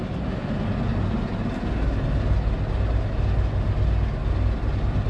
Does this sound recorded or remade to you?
recorded